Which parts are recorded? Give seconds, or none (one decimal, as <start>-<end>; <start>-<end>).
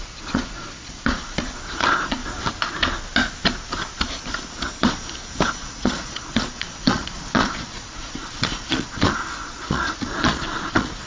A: 2.2-5.5